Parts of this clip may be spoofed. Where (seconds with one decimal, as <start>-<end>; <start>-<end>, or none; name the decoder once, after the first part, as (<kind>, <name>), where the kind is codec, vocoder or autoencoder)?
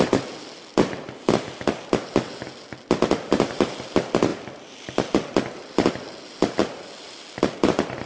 none